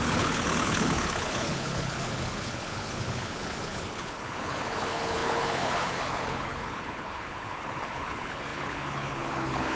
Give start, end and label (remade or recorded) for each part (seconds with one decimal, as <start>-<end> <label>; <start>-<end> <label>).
0.0-9.8 remade